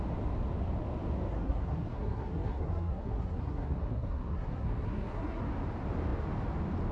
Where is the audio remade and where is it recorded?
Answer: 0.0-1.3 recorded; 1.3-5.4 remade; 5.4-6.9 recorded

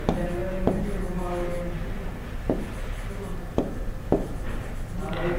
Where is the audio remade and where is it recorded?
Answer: 0.0-3.5 recorded; 3.5-4.5 remade; 4.5-5.4 recorded